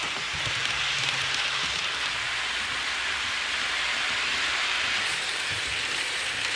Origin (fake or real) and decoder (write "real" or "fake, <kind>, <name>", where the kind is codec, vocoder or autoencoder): real